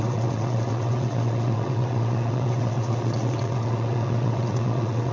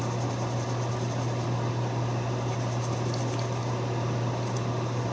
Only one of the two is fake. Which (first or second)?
first